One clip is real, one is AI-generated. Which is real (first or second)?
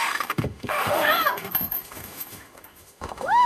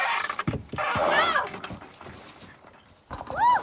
second